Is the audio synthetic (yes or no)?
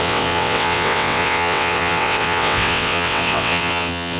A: yes